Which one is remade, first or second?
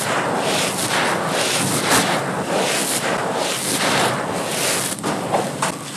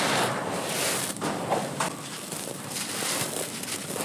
second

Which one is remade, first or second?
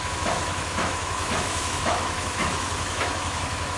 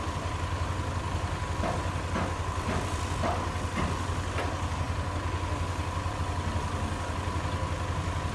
first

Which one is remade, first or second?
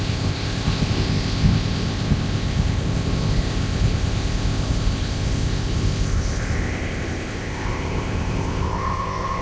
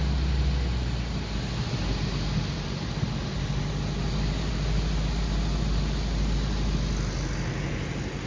first